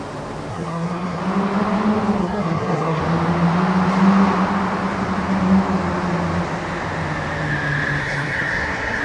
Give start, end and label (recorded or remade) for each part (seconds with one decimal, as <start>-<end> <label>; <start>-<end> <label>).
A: 0.0-0.5 recorded; 0.5-1.2 remade; 1.2-2.2 recorded; 2.2-3.0 remade; 3.0-8.0 recorded; 8.0-9.0 remade